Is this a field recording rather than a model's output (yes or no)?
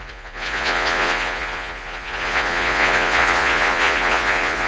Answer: no